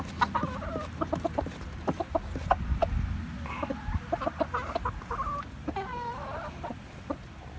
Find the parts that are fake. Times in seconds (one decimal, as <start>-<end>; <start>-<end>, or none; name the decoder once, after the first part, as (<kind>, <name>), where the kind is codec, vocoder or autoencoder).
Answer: none